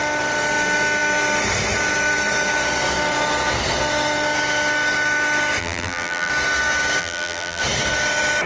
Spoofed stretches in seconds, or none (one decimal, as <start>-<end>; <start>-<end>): 5.6-6.3; 7.0-7.6